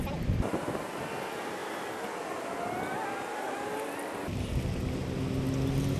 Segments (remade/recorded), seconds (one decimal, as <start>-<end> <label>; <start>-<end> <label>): 0.0-6.0 recorded